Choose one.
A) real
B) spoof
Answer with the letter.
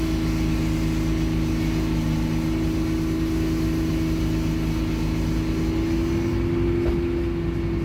A